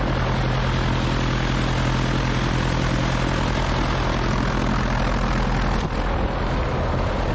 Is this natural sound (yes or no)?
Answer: yes